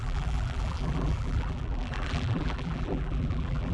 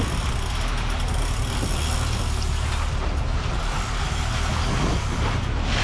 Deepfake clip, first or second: first